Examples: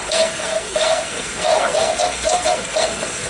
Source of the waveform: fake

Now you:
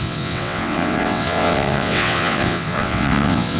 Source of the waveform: fake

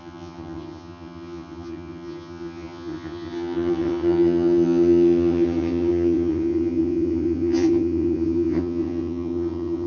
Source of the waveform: fake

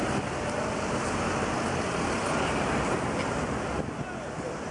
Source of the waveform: real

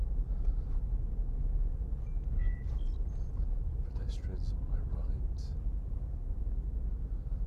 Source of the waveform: real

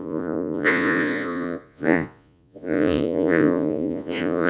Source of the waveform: fake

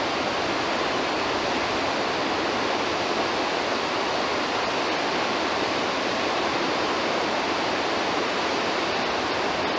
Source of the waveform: real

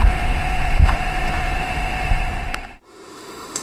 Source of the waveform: fake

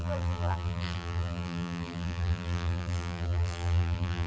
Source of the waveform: fake